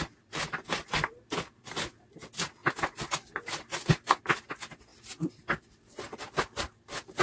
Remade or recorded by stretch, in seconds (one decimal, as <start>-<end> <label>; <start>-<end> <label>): 0.0-7.2 recorded